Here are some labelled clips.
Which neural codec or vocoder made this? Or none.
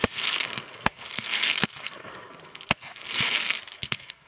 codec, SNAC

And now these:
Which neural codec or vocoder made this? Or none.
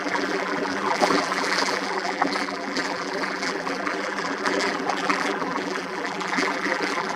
vocoder, BigVGAN v2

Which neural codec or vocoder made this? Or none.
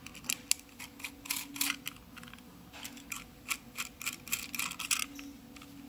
none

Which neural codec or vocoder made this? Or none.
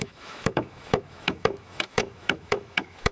autoencoder, DAC-VAE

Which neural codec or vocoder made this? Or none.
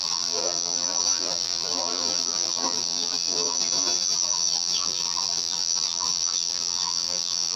vocoder, BigVGAN v2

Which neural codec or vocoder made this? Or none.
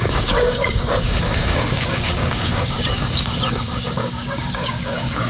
codec, DAC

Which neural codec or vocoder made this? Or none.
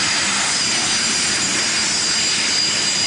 none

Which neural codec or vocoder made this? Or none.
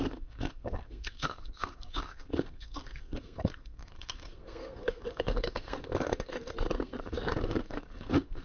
codec, SNAC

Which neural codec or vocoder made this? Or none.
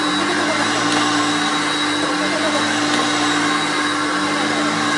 none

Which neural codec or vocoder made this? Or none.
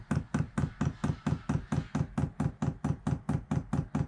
none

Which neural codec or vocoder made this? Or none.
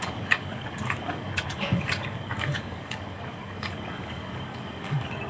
codec, DAC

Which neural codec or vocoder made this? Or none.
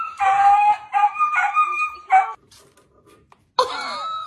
none